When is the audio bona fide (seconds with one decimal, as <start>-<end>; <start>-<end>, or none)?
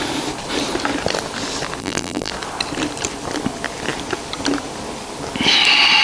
0.0-1.8; 2.3-6.0